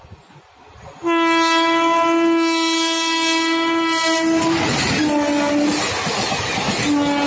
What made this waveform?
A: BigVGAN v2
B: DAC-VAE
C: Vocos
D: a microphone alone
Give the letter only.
D